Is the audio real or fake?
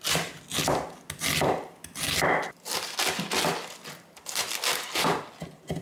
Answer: real